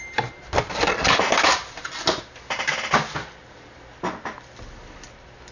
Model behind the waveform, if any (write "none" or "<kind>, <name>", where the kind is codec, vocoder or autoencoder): none